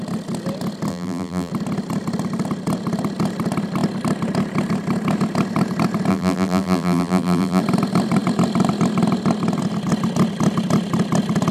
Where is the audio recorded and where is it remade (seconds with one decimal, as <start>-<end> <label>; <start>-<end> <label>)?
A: 0.0-0.9 recorded; 0.9-1.5 remade; 1.5-6.1 recorded; 6.1-7.6 remade; 7.6-11.5 recorded